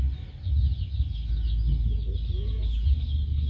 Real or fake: real